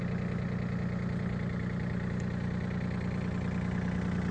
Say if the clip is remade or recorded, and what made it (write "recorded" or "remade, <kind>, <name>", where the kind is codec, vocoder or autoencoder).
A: recorded